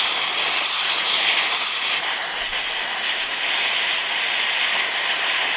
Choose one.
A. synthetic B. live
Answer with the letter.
B